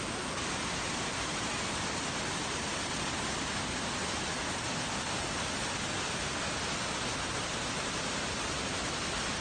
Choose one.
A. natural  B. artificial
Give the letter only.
A